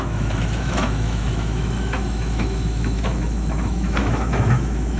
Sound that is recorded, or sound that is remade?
remade